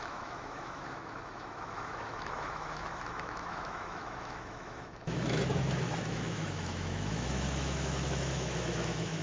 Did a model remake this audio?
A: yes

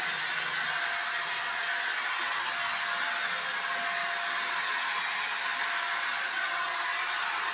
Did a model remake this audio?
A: no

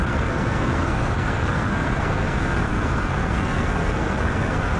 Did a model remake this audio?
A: yes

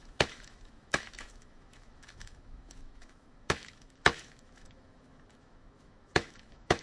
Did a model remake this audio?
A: yes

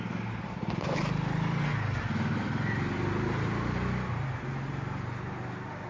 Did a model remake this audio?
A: no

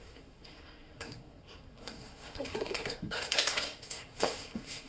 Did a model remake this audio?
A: yes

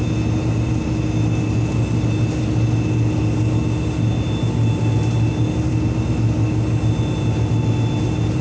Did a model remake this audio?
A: no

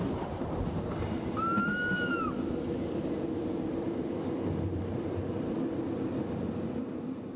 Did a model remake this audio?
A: no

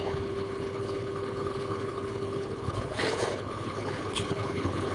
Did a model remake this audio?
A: yes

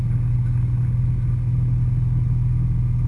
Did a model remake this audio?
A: no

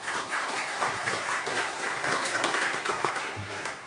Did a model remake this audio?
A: yes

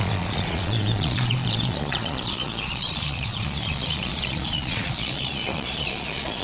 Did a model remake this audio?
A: yes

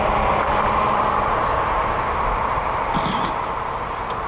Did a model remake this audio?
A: no